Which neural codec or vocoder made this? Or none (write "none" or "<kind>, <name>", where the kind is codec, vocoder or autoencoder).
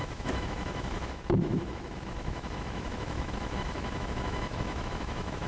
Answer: autoencoder, DAC-VAE